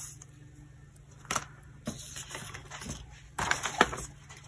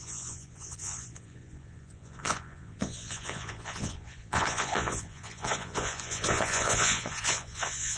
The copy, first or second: second